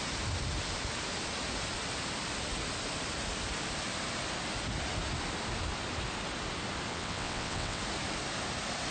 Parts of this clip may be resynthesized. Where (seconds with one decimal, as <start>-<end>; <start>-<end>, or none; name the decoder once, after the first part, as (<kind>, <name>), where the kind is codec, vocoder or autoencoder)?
6.9-7.8 (vocoder, WaveNeXt)